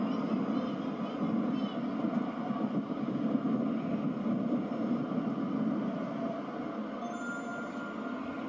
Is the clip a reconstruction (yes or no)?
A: no